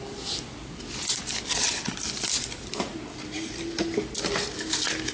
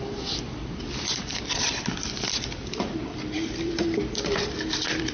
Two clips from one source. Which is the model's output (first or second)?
second